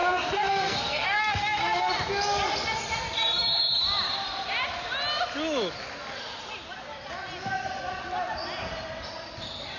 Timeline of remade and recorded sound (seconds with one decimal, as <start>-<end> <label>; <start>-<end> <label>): 0.0-1.9 remade; 1.9-9.8 recorded